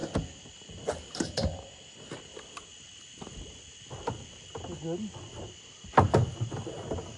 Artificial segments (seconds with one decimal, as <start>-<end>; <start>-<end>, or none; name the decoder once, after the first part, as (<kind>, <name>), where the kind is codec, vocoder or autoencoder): 0.0-2.3 (vocoder, BigVGAN v2); 5.5-7.2